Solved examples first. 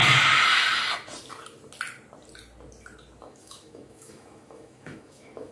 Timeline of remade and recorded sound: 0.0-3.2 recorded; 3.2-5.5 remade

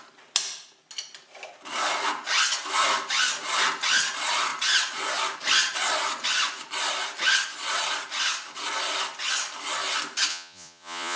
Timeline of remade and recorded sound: 0.0-10.3 recorded; 10.3-11.2 remade

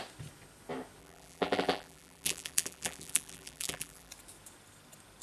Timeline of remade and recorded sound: 0.0-1.0 recorded; 1.0-4.1 remade; 4.1-5.2 recorded